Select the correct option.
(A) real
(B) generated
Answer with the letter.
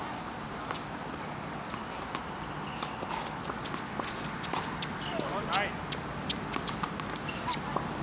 A